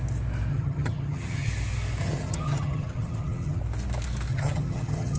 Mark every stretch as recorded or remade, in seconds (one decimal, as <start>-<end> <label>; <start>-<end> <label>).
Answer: 0.0-0.5 recorded; 0.5-1.5 remade; 1.5-2.0 recorded; 2.0-3.6 remade; 3.6-4.3 recorded; 4.3-5.2 remade